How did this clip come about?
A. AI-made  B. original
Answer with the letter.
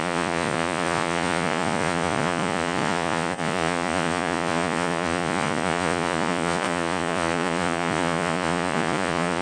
A